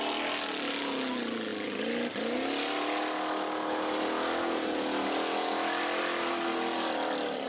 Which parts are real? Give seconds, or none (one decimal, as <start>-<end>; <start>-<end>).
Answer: 0.0-7.5